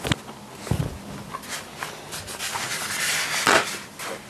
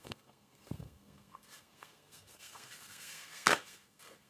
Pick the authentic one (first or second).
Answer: first